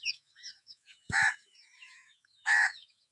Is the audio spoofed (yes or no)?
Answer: yes